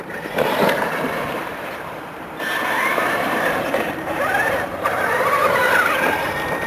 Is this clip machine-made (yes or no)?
yes